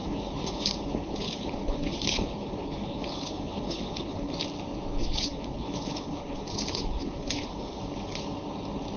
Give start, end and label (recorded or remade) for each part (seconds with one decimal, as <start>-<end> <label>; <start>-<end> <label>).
0.0-4.3 remade; 4.3-5.0 recorded; 5.0-7.8 remade; 7.8-9.0 recorded